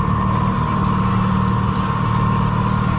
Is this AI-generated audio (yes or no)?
no